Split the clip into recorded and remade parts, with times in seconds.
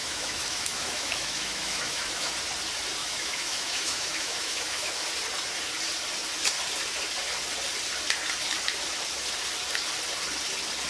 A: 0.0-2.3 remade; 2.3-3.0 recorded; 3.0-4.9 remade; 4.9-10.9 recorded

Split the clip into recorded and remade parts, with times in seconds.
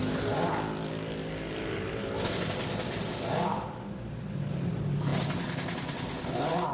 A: 0.0-6.7 recorded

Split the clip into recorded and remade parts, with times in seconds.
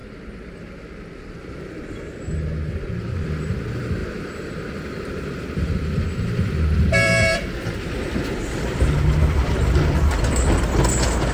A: 0.0-1.6 recorded; 1.6-2.3 remade; 2.3-2.9 recorded; 2.9-11.3 remade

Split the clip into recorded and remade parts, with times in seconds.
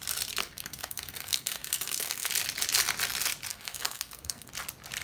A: 0.0-0.4 recorded; 0.4-2.3 remade; 2.3-3.5 recorded; 3.5-4.5 remade; 4.5-5.0 recorded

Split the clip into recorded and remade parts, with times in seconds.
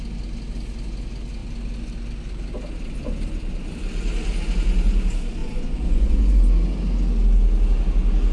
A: 0.0-5.4 recorded; 5.4-6.4 remade; 6.4-8.3 recorded